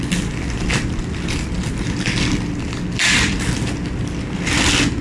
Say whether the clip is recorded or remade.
recorded